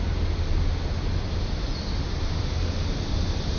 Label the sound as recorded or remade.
recorded